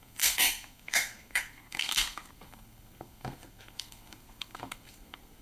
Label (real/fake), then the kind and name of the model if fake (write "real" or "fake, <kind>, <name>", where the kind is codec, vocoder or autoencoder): fake, codec, SNAC